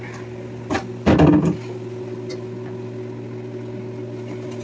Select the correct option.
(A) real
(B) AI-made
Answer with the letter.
A